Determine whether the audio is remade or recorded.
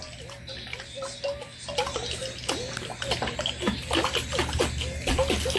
recorded